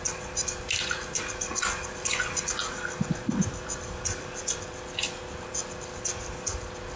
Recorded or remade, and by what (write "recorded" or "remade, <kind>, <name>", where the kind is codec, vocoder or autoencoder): remade, vocoder, BigVGAN v2